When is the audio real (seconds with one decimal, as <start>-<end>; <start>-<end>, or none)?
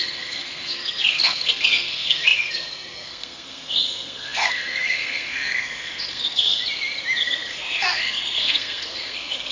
6.6-7.2